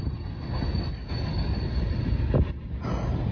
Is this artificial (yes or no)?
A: no